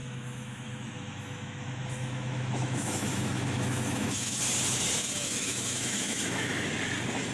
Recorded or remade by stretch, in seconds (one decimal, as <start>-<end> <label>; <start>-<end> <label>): 0.0-4.4 remade; 4.4-5.0 recorded; 5.0-6.7 remade; 6.7-7.3 recorded